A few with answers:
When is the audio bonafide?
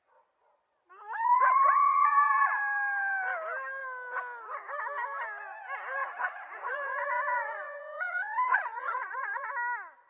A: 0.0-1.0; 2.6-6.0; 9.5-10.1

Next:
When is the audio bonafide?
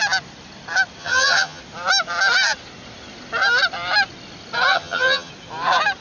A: 0.0-1.0; 1.6-4.7; 5.3-6.0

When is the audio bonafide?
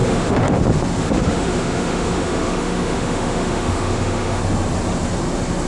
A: 0.6-1.0; 4.4-5.7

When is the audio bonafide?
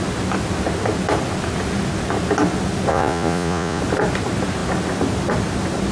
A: 0.0-2.9; 3.8-5.9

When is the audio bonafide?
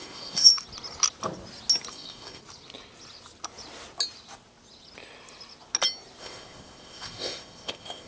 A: 0.5-1.9; 2.4-6.2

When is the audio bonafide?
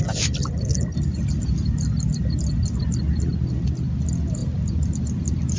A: 0.0-5.6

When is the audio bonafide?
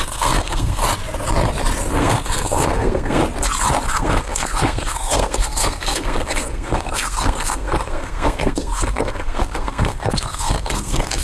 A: 0.8-1.9; 3.2-3.9